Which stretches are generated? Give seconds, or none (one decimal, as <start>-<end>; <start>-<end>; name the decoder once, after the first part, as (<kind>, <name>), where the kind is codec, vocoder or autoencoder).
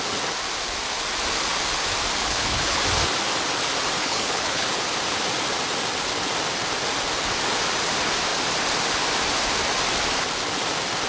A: 2.2-2.8 (codec, HILCodec); 4.0-4.7